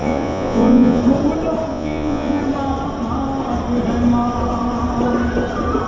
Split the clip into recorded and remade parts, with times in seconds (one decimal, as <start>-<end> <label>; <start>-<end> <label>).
0.0-1.0 remade; 1.0-1.7 recorded; 1.7-2.4 remade; 2.4-5.9 recorded